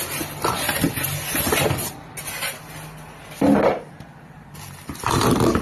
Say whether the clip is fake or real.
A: real